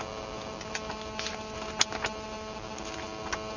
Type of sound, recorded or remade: recorded